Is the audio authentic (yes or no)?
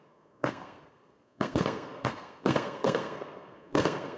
no